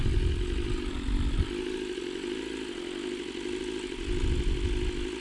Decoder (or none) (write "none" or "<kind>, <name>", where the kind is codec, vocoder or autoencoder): none